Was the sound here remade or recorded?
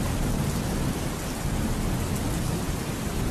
recorded